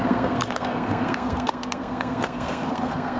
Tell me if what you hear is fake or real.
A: fake